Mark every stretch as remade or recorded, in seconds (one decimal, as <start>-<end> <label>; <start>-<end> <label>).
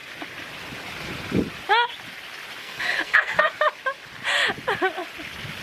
0.0-2.6 recorded; 2.6-3.5 remade; 3.5-5.6 recorded